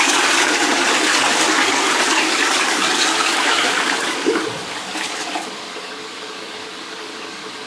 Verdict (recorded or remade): remade